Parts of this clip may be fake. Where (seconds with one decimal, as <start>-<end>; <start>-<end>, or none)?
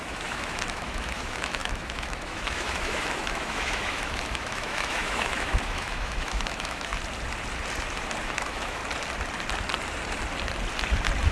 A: 0.0-6.9; 8.2-8.8